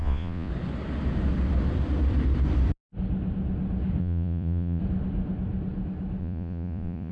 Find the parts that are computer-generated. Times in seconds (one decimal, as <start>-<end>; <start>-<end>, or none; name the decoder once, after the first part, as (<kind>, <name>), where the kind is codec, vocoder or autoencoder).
0.0-0.5 (vocoder, Vocos); 4.0-4.8; 6.2-7.1